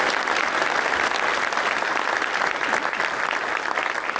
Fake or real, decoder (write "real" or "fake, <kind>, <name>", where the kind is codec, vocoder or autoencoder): real